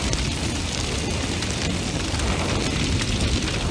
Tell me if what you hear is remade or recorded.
recorded